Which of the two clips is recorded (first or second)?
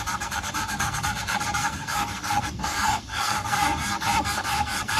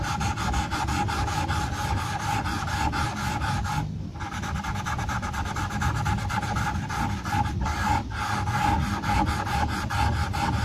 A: second